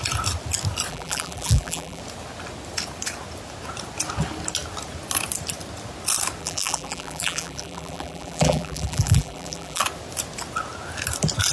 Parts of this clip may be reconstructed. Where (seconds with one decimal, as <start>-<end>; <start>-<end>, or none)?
0.9-2.0; 6.4-9.8